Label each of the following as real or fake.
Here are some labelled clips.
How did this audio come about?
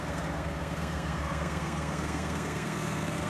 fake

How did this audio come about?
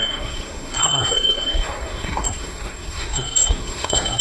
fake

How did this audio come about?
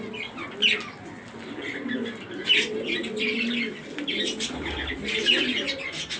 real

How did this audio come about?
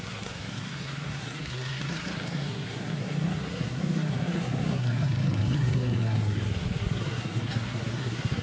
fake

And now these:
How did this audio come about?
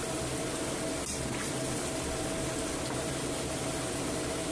real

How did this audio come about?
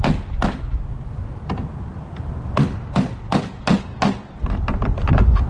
real